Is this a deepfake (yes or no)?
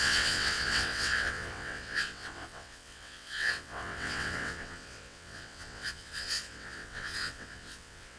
yes